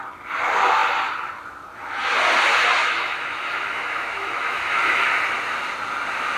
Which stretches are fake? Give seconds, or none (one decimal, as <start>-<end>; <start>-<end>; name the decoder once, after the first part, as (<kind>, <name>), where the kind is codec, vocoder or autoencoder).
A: 2.8-5.1 (autoencoder, DAC-VAE)

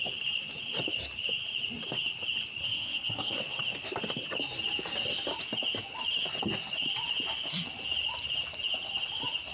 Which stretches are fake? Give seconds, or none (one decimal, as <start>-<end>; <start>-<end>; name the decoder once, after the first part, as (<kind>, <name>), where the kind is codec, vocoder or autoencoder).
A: 2.6-3.4 (codec, SNAC)

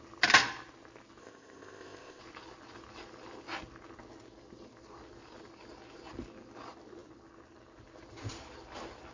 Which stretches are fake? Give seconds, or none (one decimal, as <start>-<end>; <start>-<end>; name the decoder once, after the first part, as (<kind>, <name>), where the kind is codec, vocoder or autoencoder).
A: 1.2-2.2 (codec, ZipCodec)

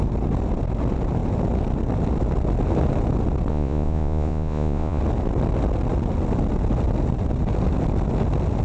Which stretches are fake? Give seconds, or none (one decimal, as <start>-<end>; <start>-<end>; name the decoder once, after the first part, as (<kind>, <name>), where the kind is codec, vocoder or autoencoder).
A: 3.5-5.0 (vocoder, Vocos)

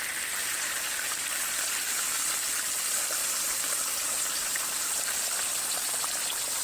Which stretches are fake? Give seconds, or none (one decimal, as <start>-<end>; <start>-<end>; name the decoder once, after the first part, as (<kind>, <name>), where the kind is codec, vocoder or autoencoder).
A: 0.4-1.4 (vocoder, BigVGAN v2); 3.2-5.2